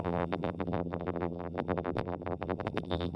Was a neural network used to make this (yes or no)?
yes